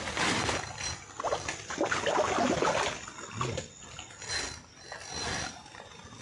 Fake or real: real